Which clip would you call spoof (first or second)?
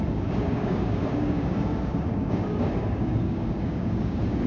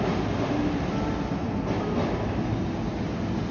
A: first